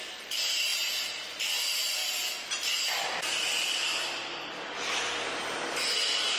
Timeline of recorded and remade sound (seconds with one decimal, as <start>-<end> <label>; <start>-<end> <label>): 0.0-0.7 recorded; 0.7-1.4 remade; 1.4-2.0 recorded; 2.0-2.5 remade; 2.5-6.4 recorded